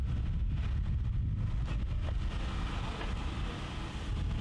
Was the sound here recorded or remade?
recorded